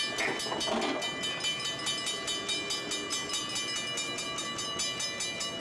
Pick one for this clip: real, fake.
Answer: real